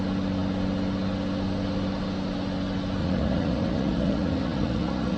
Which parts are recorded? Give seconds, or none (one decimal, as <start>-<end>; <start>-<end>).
0.0-3.0